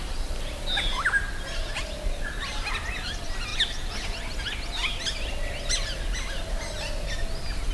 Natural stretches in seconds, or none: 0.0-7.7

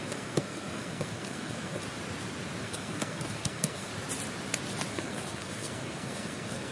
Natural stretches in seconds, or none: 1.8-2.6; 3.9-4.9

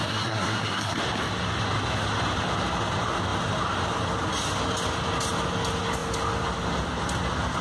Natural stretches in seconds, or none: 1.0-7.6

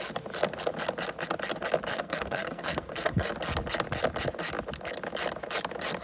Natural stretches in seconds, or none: 0.0-1.9; 3.3-6.0